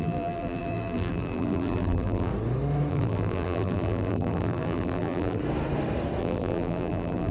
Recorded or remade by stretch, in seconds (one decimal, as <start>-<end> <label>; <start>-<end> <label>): 0.0-2.3 remade; 2.3-2.9 recorded; 2.9-5.4 remade; 5.4-6.2 recorded; 6.2-7.3 remade